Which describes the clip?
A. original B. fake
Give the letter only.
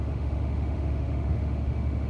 B